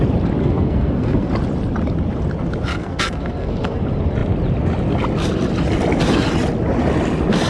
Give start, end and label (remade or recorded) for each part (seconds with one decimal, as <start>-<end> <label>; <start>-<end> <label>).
0.0-0.4 recorded; 0.4-1.3 remade; 1.3-2.7 recorded; 2.7-3.8 remade; 3.8-7.5 recorded